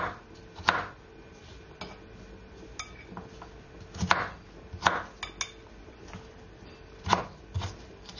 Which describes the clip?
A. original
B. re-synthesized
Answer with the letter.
A